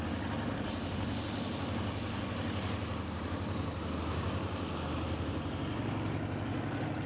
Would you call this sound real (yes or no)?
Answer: yes